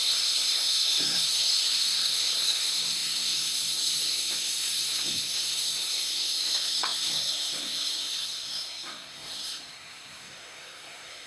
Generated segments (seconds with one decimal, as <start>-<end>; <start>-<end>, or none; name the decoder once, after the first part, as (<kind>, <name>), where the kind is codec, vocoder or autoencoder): 0.0-11.3 (codec, SNAC)